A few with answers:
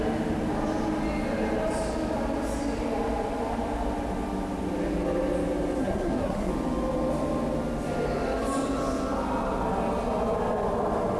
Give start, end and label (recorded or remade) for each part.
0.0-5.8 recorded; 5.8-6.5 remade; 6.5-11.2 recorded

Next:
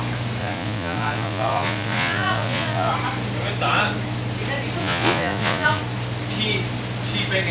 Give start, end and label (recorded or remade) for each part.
0.0-0.4 recorded; 0.4-2.9 remade; 2.9-4.8 recorded; 4.8-5.8 remade; 5.8-7.5 recorded